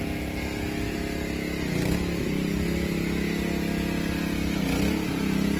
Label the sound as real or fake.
real